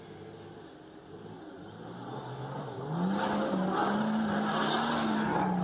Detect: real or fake real